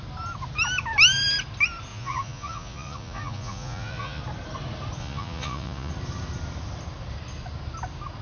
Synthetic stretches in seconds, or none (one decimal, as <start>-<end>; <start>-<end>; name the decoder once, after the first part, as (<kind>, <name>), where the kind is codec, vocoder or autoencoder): 1.9-4.2 (vocoder, Vocos); 5.0-5.9